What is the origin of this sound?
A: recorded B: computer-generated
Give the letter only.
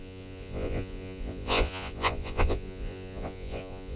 B